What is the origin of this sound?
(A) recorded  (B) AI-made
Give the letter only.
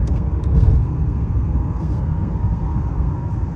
B